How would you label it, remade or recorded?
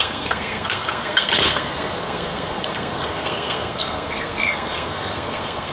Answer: remade